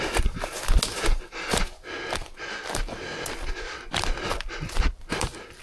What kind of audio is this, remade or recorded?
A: recorded